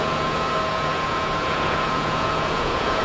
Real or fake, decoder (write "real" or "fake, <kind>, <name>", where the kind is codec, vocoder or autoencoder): fake, vocoder, Vocos